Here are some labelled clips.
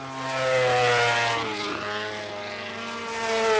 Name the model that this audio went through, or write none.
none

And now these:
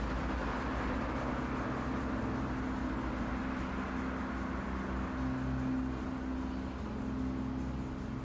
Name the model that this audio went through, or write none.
none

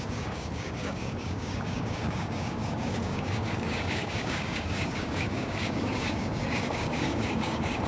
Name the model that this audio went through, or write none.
codec, DAC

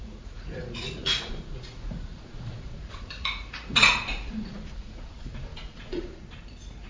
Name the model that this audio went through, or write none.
vocoder, Vocos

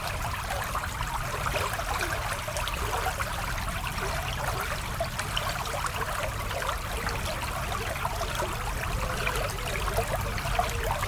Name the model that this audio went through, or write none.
none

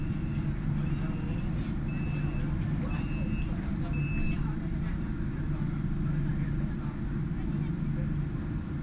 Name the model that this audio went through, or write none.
none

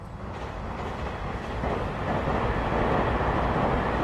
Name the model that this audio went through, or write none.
none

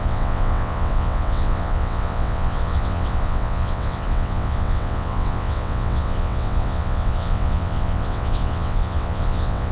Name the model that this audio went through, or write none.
vocoder, WaveNeXt